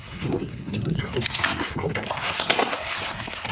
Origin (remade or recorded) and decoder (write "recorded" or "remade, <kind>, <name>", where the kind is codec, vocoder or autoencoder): remade, codec, SNAC